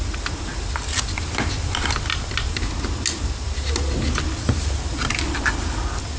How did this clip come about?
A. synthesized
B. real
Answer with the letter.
B